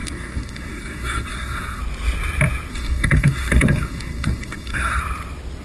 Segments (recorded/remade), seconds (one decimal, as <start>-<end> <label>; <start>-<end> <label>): 0.0-1.8 remade; 1.8-2.7 recorded; 2.7-5.0 remade; 5.0-5.6 recorded